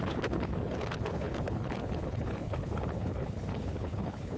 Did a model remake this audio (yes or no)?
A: yes